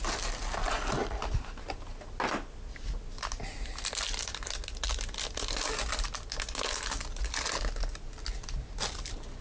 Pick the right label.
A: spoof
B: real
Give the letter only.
B